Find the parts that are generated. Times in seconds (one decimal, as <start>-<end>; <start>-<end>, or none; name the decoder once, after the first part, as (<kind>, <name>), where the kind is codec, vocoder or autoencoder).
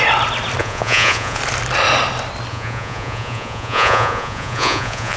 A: 0.6-1.4 (vocoder, Vocos); 2.5-5.2